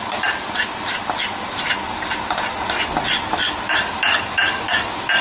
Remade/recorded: recorded